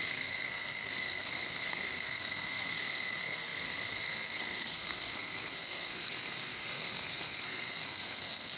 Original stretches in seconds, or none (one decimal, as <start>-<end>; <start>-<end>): none